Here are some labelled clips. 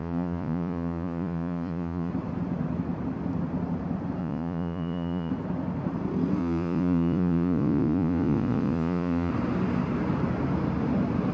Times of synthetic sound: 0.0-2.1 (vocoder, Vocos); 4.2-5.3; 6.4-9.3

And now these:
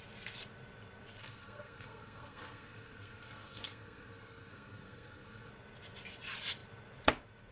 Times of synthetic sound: 1.2-5.5 (codec, SNAC)

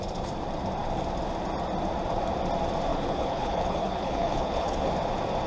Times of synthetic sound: 2.9-4.9 (codec, HILCodec)

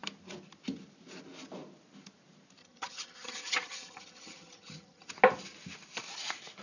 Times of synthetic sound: 2.6-5.1 (vocoder, HiFi-GAN)

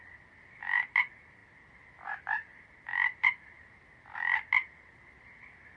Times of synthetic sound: none